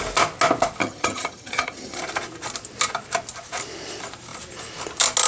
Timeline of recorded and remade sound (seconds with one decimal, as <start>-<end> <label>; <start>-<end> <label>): 0.0-0.8 recorded; 0.8-2.0 remade; 2.0-5.3 recorded